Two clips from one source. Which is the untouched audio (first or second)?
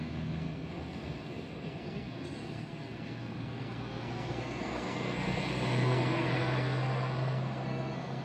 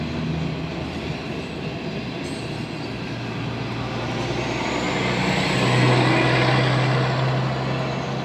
second